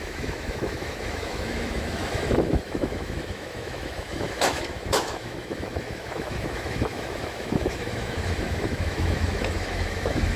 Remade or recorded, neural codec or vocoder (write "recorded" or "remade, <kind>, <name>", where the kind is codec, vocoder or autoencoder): remade, autoencoder, DAC-VAE